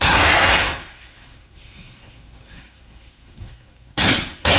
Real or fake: fake